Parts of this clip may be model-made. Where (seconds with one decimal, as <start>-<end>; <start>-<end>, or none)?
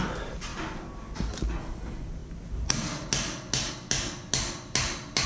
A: none